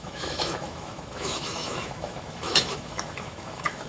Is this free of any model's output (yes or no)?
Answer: no